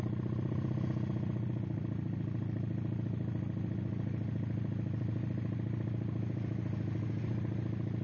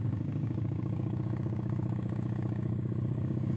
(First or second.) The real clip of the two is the first